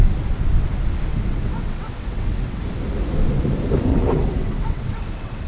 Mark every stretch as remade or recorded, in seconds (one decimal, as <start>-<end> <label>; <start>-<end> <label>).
0.0-1.1 recorded; 1.1-2.6 remade; 2.6-3.9 recorded; 3.9-5.5 remade